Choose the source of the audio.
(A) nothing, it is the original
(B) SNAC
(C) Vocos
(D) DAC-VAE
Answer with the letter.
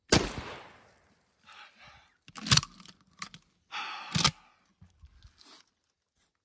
A